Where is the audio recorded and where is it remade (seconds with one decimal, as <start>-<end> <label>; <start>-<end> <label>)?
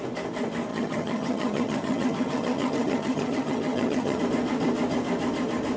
0.0-0.7 recorded; 0.7-4.2 remade; 4.2-5.8 recorded